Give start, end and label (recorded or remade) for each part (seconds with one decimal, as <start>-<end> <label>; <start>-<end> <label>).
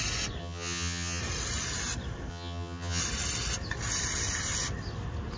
0.0-0.4 recorded; 0.4-1.2 remade; 1.2-2.3 recorded; 2.3-3.0 remade; 3.0-5.4 recorded